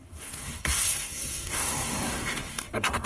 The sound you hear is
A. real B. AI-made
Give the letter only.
B